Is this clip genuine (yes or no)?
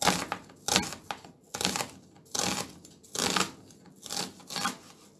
yes